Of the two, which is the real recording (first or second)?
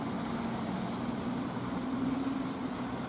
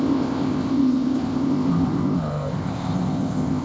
first